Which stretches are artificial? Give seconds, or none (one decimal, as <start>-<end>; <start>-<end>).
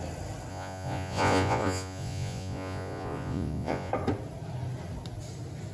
0.5-3.9